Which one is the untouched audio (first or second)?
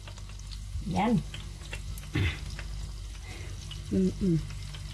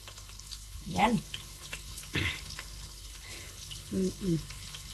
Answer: first